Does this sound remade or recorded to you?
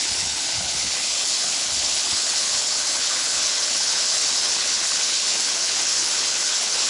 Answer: remade